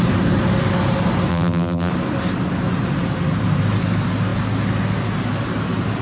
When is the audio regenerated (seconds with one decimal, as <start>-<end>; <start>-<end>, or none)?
1.3-1.9

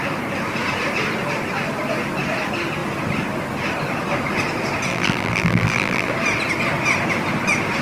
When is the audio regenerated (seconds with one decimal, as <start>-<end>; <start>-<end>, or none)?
4.9-6.1

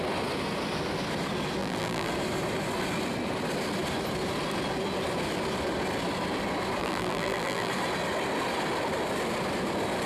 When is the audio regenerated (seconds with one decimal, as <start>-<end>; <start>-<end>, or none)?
1.6-2.1; 6.8-7.7

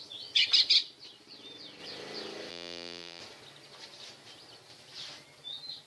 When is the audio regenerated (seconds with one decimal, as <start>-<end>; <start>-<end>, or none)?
2.5-3.2

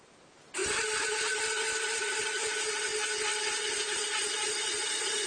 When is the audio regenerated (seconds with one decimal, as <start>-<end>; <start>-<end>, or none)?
0.0-2.9; 3.9-5.3